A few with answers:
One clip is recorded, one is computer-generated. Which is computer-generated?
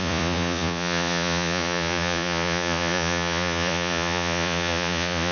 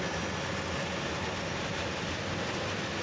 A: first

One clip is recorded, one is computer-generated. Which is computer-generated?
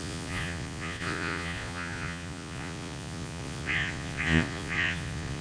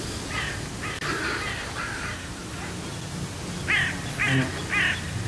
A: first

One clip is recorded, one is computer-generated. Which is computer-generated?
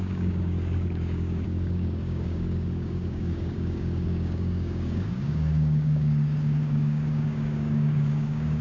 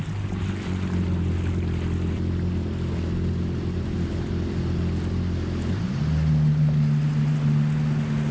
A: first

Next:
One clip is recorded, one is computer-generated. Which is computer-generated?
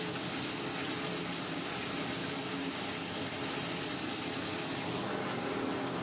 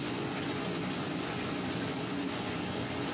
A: second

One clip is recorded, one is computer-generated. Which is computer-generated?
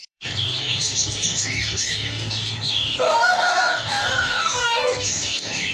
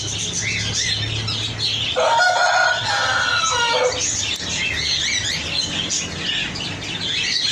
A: first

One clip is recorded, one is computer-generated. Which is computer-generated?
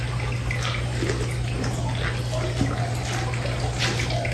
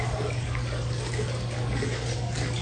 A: second